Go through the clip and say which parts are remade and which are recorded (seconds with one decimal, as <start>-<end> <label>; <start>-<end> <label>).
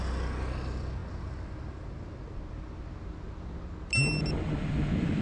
0.0-5.2 recorded